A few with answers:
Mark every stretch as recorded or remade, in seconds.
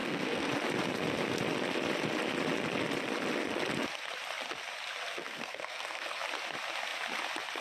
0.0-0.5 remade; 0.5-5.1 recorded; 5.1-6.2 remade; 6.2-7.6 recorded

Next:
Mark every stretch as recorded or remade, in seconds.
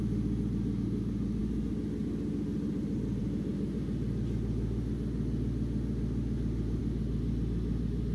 0.0-8.1 recorded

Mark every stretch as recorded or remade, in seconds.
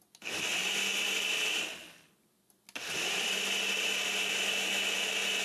0.0-5.4 recorded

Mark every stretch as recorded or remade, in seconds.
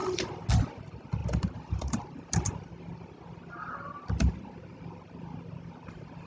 0.0-6.3 recorded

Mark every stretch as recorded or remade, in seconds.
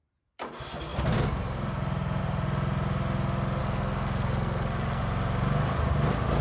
0.0-3.6 recorded; 3.6-5.0 remade; 5.0-6.4 recorded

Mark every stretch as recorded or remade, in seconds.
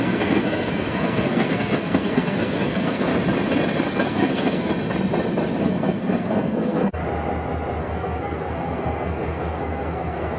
0.0-3.1 remade; 3.1-3.9 recorded; 3.9-4.7 remade; 4.7-5.6 recorded; 5.6-7.0 remade; 7.0-7.8 recorded; 7.8-10.4 remade